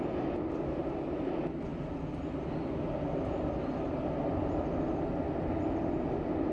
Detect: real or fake real